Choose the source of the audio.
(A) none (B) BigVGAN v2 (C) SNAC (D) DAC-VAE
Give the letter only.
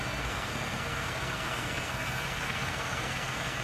C